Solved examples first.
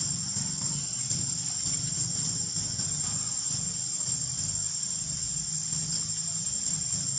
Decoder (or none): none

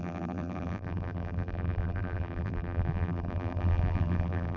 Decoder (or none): vocoder, BigVGAN v2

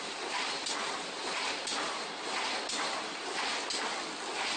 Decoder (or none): none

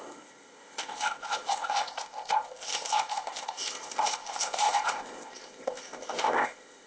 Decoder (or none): codec, ZipCodec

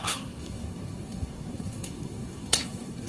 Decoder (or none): codec, SNAC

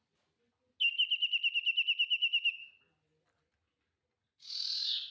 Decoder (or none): none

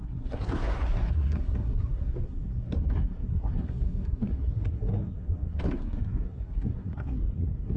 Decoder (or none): codec, SNAC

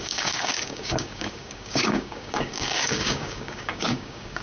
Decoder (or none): codec, DAC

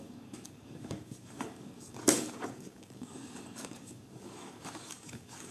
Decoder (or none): codec, DAC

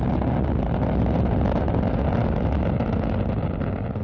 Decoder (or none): none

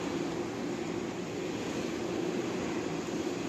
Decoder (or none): vocoder, BigVGAN v2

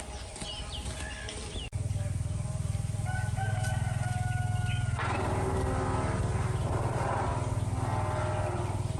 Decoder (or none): none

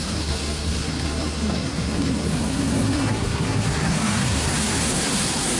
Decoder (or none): codec, SNAC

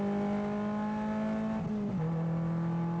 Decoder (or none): none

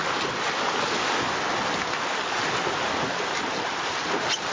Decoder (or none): none